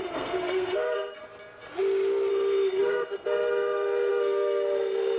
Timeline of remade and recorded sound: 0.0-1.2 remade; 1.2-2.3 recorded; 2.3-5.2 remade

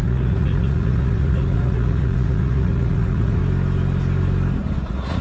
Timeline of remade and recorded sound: 0.0-3.4 remade; 3.4-4.8 recorded; 4.8-5.2 remade

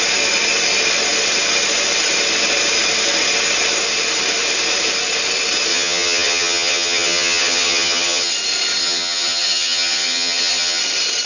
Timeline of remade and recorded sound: 0.0-5.7 recorded; 5.7-8.3 remade; 8.3-8.8 recorded; 8.8-10.8 remade; 10.8-11.3 recorded

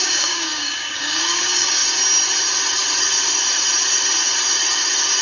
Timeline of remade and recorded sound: 0.0-1.8 remade; 1.8-5.2 recorded

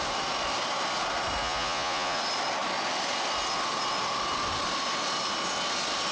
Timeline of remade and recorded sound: 0.0-1.4 recorded; 1.4-2.2 remade; 2.2-6.1 recorded

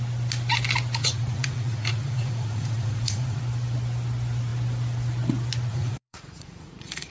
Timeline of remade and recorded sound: 0.0-1.0 recorded; 1.0-3.4 remade; 3.4-5.7 recorded; 5.7-7.1 remade

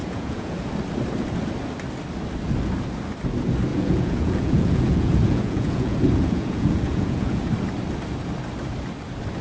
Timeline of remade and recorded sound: 0.0-0.7 remade; 0.7-3.7 recorded; 3.7-7.5 remade; 7.5-9.4 recorded